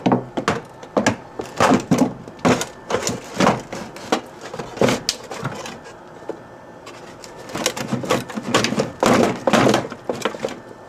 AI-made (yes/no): no